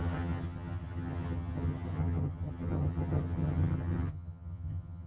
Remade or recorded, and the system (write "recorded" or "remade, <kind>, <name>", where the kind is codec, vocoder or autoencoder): remade, vocoder, HiFi-GAN